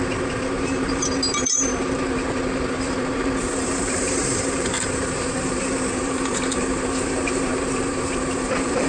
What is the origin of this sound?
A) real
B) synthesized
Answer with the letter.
B